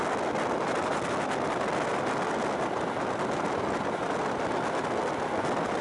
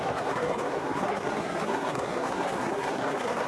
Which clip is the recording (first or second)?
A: first